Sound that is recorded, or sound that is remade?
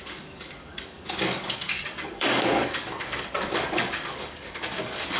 remade